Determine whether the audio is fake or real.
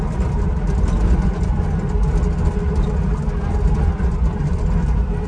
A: real